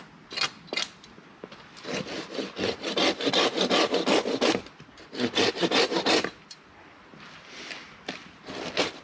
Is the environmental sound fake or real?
real